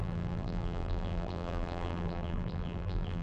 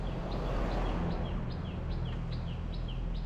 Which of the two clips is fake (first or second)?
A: first